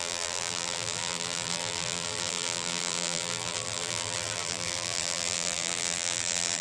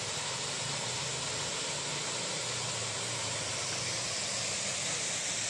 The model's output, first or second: first